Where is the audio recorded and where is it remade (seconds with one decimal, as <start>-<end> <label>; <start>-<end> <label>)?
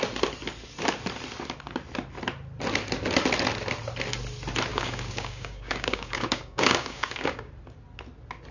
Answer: 0.0-4.7 recorded; 4.7-7.5 remade; 7.5-8.5 recorded